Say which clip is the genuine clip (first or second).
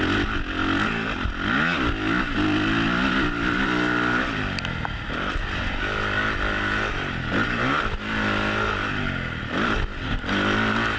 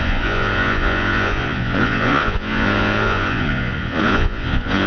first